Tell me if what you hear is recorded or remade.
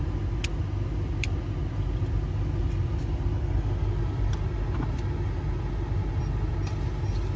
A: recorded